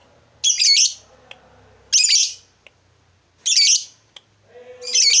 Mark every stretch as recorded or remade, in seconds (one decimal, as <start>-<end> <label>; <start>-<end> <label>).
0.0-5.2 recorded